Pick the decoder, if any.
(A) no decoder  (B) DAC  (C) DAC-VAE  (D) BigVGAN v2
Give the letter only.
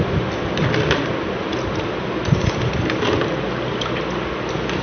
A